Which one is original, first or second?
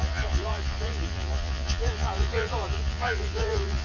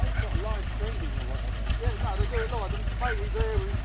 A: second